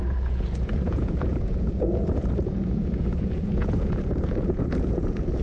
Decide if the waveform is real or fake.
fake